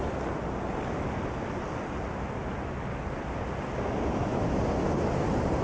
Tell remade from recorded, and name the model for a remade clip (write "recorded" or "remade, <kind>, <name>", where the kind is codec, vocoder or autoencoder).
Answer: recorded